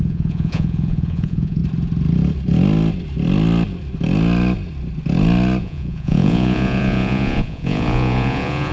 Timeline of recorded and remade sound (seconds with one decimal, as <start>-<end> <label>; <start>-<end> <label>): 0.0-1.6 remade; 1.6-5.6 recorded; 5.6-8.7 remade